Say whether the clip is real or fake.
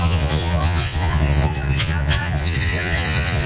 fake